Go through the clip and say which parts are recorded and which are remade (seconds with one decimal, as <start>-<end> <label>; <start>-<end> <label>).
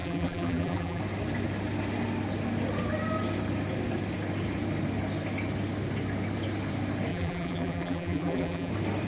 0.0-1.0 remade; 1.0-7.1 recorded; 7.1-8.7 remade; 8.7-9.1 recorded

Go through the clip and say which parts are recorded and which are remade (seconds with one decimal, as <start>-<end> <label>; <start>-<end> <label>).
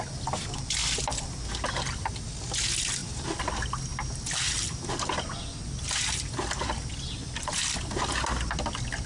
0.0-9.1 recorded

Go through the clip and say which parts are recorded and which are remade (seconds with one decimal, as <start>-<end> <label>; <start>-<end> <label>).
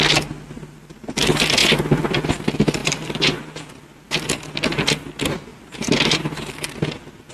0.0-2.8 recorded; 2.8-3.7 remade; 3.7-5.5 recorded; 5.5-6.4 remade; 6.4-7.3 recorded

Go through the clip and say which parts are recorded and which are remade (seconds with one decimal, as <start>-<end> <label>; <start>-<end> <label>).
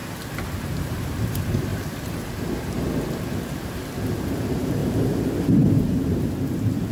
0.0-0.6 recorded; 0.6-1.7 remade; 1.7-4.3 recorded; 4.3-6.9 remade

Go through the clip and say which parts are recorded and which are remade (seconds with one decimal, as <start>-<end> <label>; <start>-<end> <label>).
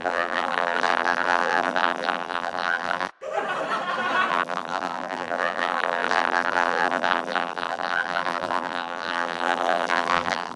0.0-3.1 remade; 3.1-4.3 recorded; 4.3-10.6 remade